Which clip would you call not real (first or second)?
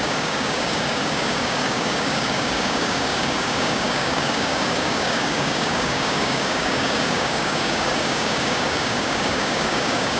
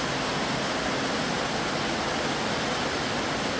first